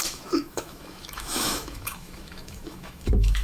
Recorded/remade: remade